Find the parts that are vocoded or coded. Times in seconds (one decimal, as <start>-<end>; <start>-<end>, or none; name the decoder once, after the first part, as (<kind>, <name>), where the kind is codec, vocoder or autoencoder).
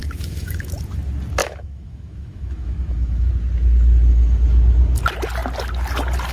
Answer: 0.0-0.7 (autoencoder, DAC-VAE); 1.4-3.3